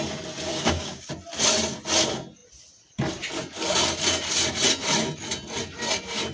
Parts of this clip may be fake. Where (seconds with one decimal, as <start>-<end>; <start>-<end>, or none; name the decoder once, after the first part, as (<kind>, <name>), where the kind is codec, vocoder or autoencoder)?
0.5-1.1 (codec, DAC)